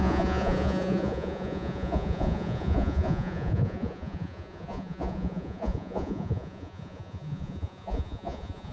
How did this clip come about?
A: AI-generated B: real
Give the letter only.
A